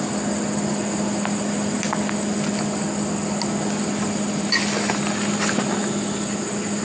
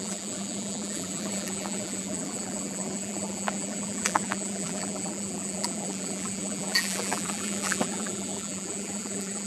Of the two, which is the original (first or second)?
first